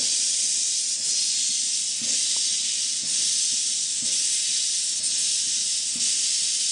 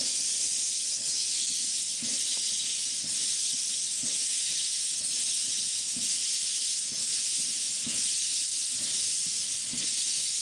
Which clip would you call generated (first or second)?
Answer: second